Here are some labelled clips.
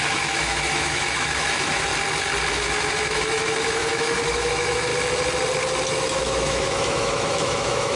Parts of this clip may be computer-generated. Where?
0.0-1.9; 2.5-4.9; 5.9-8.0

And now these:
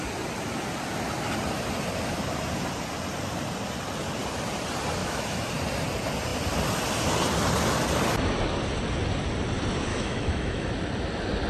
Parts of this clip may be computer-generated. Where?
5.0-5.5; 9.9-10.7